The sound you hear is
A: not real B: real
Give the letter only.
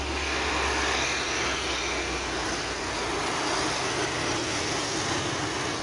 B